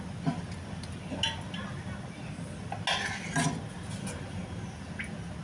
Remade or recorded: recorded